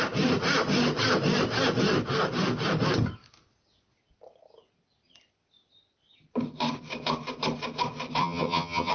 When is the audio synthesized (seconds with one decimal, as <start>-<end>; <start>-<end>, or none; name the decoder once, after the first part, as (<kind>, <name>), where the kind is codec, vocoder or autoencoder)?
8.2-8.9 (vocoder, HiFi-GAN)